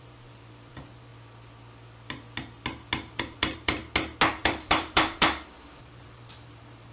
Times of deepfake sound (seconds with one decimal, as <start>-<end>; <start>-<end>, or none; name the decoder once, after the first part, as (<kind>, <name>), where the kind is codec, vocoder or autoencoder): 0.0-1.1 (vocoder, BigVGAN v2); 3.2-3.8; 4.3-6.9